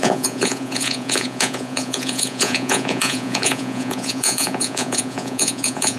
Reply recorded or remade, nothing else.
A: remade